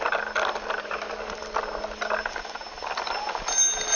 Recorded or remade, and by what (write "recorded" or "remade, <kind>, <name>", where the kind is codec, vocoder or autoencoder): recorded